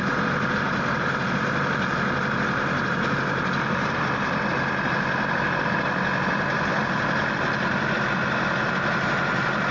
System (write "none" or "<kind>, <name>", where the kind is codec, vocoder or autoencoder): none